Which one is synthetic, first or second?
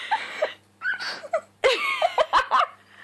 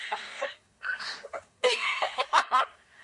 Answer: second